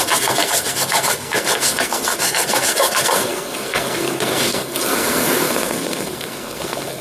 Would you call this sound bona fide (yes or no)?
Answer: no